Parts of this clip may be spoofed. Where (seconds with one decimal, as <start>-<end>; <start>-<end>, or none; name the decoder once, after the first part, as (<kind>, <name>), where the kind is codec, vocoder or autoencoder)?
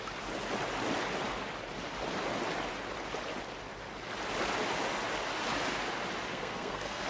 6.3-7.1 (codec, SNAC)